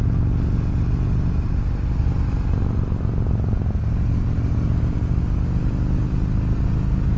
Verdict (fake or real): real